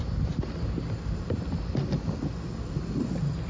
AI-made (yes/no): no